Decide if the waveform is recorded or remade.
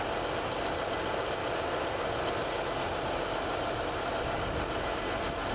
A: recorded